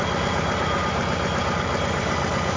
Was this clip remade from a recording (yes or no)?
no